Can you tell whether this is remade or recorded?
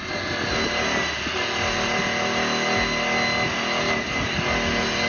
recorded